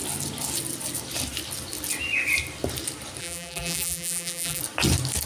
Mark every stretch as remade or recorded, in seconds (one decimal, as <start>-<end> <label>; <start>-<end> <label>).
0.0-3.2 recorded; 3.2-4.6 remade; 4.6-5.3 recorded